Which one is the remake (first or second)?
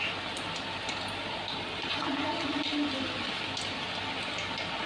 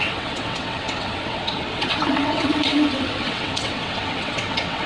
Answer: second